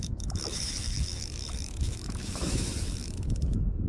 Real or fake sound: fake